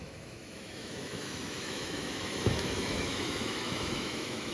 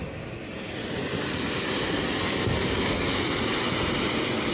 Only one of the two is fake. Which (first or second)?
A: first